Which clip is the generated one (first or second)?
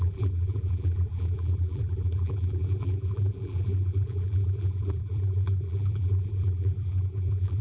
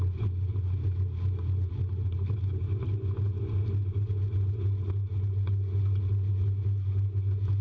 first